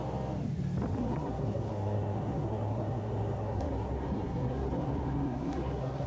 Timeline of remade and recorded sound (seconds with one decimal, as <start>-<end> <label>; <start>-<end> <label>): 0.0-1.0 recorded; 1.0-6.1 remade